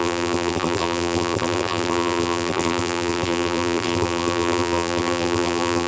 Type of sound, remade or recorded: remade